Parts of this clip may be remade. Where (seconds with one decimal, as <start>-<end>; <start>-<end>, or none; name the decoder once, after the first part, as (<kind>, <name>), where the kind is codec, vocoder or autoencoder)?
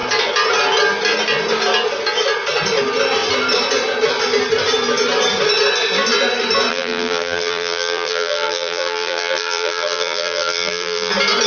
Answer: 6.7-11.1 (vocoder, BigVGAN v2)